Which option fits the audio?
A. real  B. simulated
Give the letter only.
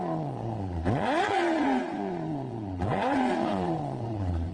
B